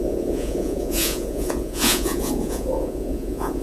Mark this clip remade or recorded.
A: remade